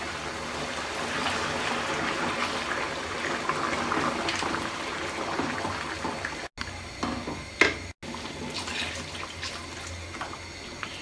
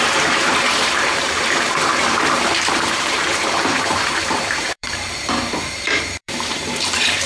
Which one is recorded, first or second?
first